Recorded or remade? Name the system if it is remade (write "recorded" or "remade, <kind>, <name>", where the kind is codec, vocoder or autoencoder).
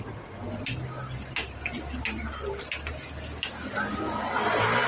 recorded